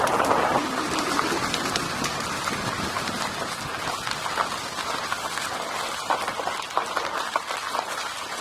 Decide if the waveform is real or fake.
real